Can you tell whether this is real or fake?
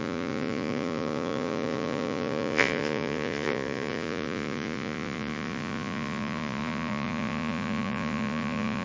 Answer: fake